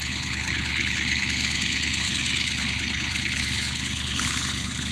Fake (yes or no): yes